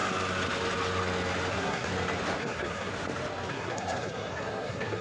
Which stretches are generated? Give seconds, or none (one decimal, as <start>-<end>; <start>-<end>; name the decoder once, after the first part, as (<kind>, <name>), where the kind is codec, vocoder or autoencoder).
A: 1.5-1.9 (codec, SNAC); 2.4-2.9; 3.5-5.0